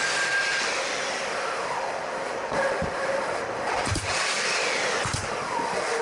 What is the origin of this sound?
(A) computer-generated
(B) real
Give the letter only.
B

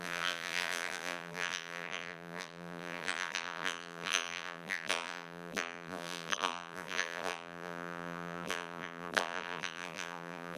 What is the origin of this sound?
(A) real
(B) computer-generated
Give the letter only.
B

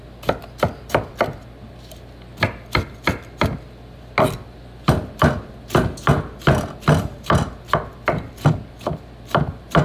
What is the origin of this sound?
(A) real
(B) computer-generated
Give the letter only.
A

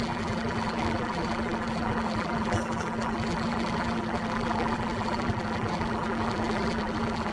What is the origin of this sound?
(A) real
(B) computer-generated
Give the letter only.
B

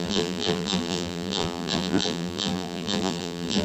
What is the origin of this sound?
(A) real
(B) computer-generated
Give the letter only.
B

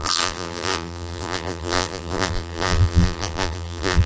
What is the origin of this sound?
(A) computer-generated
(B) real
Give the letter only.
A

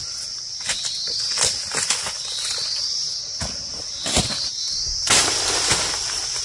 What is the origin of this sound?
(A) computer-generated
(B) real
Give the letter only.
B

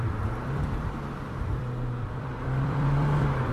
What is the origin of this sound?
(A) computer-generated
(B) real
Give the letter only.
A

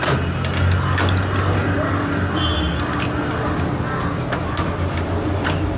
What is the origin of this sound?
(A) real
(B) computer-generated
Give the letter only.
A